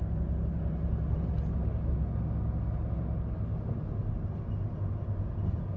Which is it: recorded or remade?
recorded